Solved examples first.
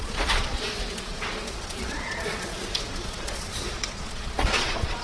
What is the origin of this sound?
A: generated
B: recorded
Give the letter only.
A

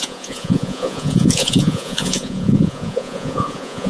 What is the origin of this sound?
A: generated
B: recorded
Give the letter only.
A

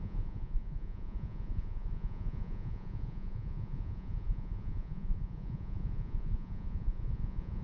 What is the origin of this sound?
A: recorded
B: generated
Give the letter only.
B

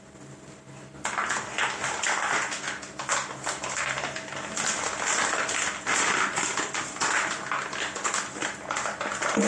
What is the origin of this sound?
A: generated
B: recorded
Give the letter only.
B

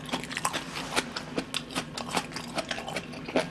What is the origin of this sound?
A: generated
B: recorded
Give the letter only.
B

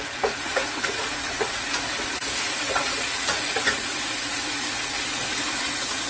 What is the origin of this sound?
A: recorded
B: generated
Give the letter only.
B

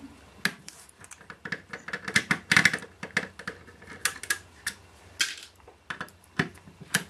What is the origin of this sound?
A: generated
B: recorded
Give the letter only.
B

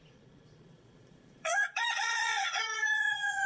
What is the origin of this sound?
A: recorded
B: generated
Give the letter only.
B